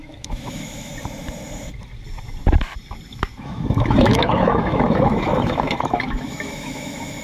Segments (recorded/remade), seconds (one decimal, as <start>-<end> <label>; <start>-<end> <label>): 0.0-0.9 remade; 0.9-3.1 recorded; 3.1-7.2 remade